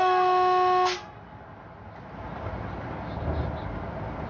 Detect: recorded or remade recorded